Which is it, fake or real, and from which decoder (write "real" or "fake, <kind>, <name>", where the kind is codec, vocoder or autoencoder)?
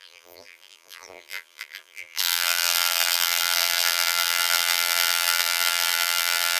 fake, vocoder, BigVGAN v2